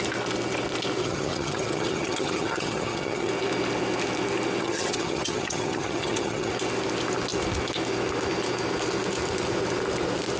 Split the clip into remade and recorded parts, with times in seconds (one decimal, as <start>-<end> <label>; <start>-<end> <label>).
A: 0.0-1.0 recorded; 1.0-3.3 remade; 3.3-4.6 recorded; 4.6-6.5 remade; 6.5-10.4 recorded